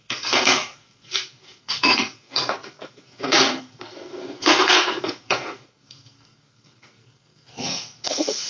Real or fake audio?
fake